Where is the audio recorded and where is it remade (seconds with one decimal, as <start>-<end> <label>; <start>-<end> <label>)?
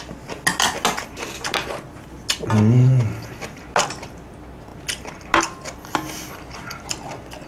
0.0-7.5 recorded